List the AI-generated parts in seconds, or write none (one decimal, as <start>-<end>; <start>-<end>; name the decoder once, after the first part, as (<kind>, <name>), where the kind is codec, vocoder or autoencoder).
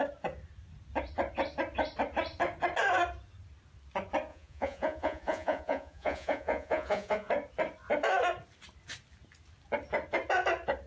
4.3-7.3 (vocoder, Vocos)